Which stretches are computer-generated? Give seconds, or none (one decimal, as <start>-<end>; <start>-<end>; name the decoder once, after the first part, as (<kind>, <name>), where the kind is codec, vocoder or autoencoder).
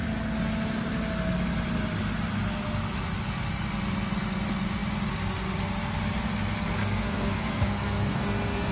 6.8-8.7 (codec, SNAC)